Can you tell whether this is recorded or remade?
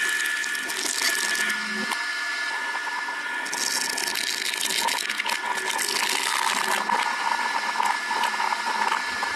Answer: recorded